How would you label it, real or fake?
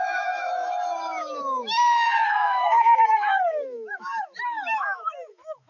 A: fake